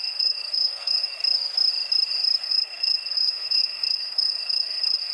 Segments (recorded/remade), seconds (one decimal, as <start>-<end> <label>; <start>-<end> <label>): 0.0-1.2 remade; 1.2-2.4 recorded; 2.4-5.1 remade